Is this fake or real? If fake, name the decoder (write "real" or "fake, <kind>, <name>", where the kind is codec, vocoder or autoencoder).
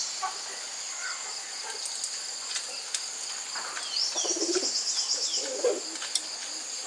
real